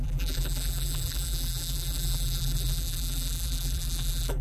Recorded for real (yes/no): no